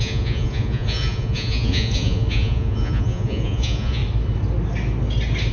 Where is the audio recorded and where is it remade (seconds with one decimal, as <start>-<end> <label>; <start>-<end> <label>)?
0.0-4.0 remade; 4.0-5.5 recorded